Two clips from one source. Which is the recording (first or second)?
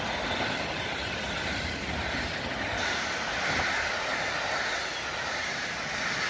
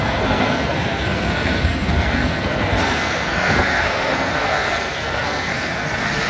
first